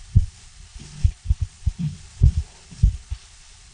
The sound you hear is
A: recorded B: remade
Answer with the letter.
B